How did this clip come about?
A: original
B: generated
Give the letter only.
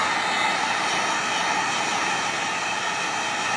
A